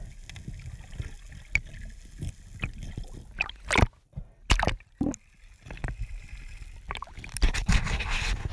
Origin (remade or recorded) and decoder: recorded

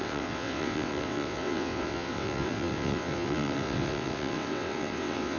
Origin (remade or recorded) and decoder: remade, vocoder, WaveNeXt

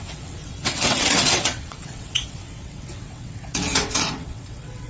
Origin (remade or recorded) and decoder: remade, vocoder, WaveNeXt